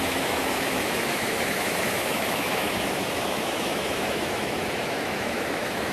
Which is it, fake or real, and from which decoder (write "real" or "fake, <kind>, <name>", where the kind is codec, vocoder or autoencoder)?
fake, autoencoder, DAC-VAE